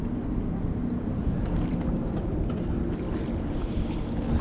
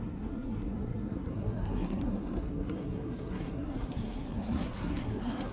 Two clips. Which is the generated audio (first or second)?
second